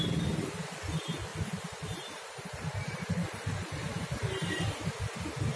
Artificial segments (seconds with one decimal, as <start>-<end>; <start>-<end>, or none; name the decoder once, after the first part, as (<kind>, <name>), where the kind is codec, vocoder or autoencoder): 1.3-4.7 (vocoder, BigVGAN v2)

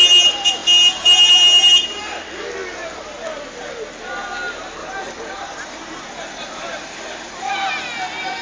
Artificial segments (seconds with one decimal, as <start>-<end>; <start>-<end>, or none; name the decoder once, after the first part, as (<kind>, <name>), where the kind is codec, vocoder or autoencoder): 4.8-7.5 (vocoder, BigVGAN v2)

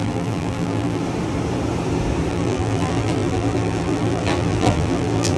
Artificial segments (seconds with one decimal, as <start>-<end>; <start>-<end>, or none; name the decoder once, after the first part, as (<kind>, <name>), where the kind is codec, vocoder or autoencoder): 0.0-1.0 (vocoder, BigVGAN v2); 2.3-5.4

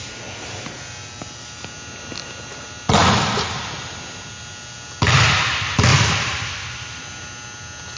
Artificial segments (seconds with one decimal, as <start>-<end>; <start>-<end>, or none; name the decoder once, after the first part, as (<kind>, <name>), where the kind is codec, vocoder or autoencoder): 5.9-6.8 (vocoder, BigVGAN v2)